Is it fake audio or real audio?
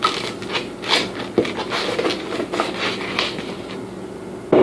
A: real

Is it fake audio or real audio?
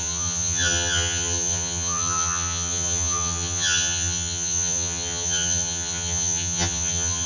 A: fake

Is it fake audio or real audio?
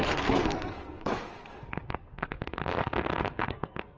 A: fake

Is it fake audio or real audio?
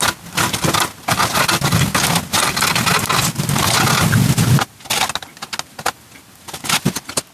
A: real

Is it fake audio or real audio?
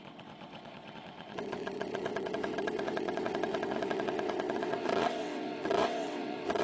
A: fake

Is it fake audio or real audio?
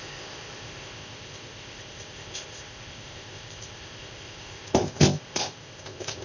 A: fake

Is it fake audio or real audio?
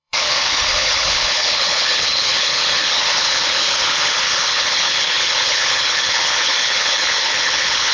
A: fake